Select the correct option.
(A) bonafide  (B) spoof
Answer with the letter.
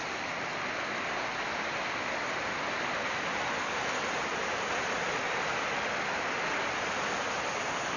A